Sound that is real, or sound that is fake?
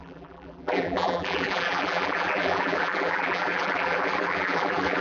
fake